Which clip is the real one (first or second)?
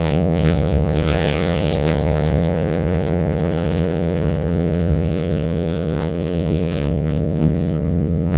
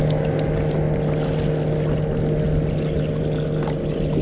second